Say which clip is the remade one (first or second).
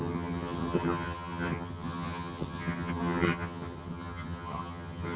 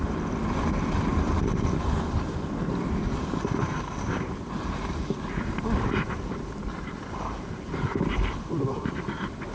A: first